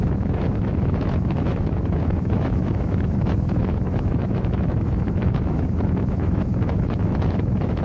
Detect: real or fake fake